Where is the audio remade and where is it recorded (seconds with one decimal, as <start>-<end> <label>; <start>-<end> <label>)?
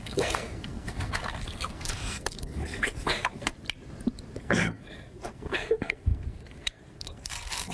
0.0-3.5 remade; 3.5-4.4 recorded; 4.4-7.7 remade